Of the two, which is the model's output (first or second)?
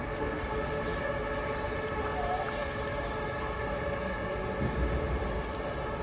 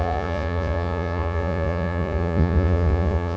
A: second